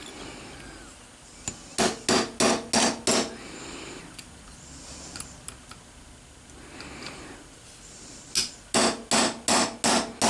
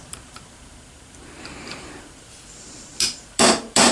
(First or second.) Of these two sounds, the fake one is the second